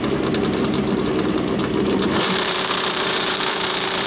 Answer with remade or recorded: remade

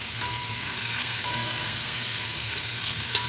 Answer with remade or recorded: remade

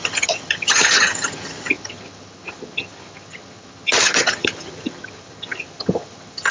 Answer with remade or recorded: remade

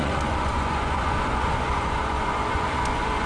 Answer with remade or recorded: remade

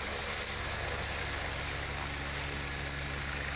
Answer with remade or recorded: recorded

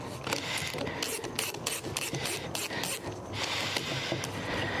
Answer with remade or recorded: recorded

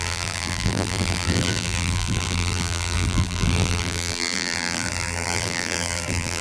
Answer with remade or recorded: remade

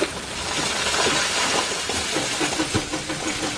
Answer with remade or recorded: recorded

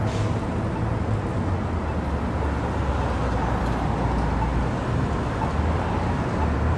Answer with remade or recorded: recorded